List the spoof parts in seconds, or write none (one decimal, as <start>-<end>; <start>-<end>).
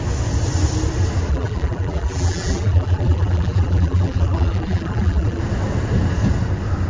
1.3-5.4